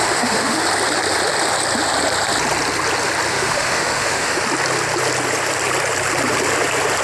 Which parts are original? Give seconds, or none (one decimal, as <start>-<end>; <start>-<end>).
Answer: 0.6-3.3; 4.4-7.0